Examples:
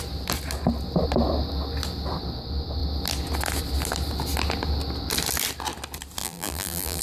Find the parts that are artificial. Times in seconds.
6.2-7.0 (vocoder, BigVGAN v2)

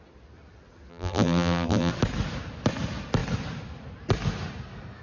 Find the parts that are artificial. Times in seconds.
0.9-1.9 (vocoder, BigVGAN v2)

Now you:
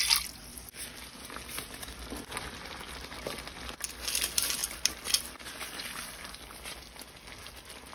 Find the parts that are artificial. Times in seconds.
none

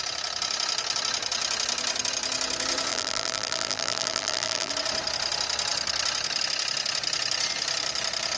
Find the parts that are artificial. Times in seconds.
2.9-4.7 (vocoder, BigVGAN v2)

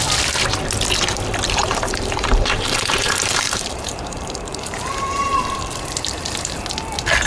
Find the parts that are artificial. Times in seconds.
1.6-5.4 (vocoder, BigVGAN v2)

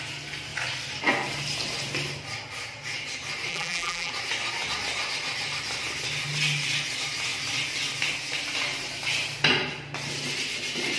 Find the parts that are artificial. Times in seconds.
3.5-4.1 (vocoder, BigVGAN v2)

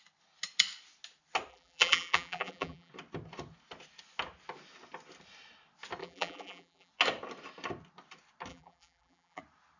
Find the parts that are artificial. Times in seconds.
1.5-2.9 (vocoder, BigVGAN v2); 6.0-6.9; 8.5-9.4